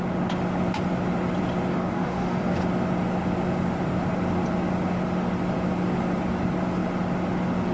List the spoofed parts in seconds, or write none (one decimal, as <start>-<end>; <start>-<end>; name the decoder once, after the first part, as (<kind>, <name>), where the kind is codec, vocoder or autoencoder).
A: 1.7-2.6 (codec, DAC)